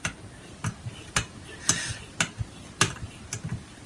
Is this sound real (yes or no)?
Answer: yes